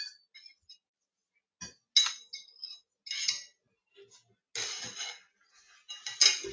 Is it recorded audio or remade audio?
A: recorded